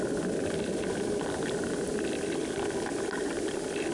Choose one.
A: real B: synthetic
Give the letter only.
A